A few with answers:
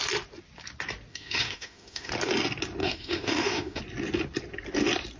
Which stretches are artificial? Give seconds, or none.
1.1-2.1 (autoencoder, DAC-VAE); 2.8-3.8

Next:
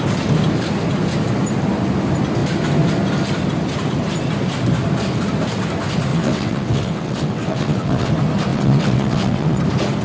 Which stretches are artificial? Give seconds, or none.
6.1-8.1 (vocoder, WaveNeXt); 8.5-9.6

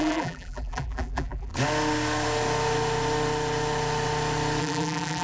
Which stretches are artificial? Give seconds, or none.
0.0-1.5 (vocoder, BigVGAN v2); 4.6-5.2

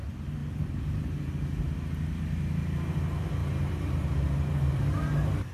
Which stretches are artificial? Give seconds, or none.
3.4-5.5 (vocoder, BigVGAN v2)

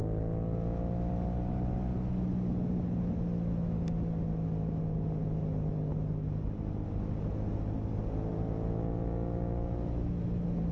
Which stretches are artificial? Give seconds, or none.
none

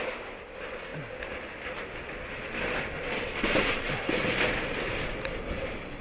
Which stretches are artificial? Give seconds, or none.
none

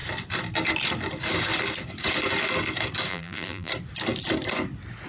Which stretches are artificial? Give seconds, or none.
3.1-3.7 (vocoder, BigVGAN v2)

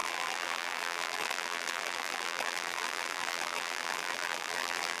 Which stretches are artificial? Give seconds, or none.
0.0-5.0 (vocoder, BigVGAN v2)